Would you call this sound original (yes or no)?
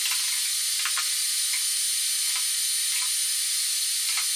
yes